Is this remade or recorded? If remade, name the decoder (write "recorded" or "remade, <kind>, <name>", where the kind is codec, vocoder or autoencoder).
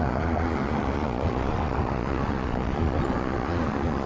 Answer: remade, vocoder, Vocos